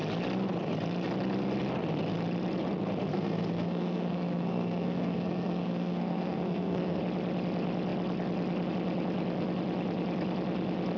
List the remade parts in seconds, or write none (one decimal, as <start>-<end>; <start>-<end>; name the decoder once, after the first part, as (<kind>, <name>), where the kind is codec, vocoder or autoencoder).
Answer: 3.1-7.0 (codec, SNAC)